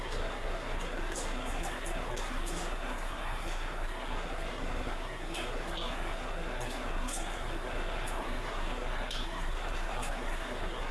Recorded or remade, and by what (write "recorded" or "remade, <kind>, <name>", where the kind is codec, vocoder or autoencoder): remade, codec, SNAC